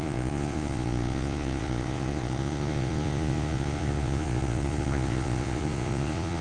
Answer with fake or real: fake